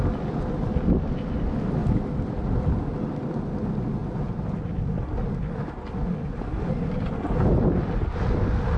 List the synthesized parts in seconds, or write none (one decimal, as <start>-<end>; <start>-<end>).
none